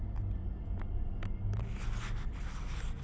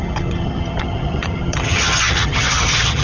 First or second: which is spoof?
second